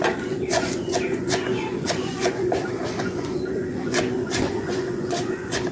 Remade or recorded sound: remade